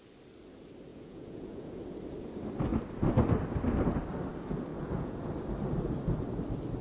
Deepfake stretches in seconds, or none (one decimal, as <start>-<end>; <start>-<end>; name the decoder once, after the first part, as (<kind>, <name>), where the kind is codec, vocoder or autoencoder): 0.9-1.8 (vocoder, Vocos); 4.7-5.3